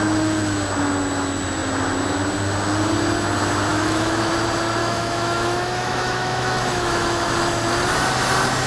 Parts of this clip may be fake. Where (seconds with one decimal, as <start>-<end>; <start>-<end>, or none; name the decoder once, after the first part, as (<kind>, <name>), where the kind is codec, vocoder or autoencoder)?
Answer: 3.7-4.3 (autoencoder, DAC-VAE); 4.8-7.3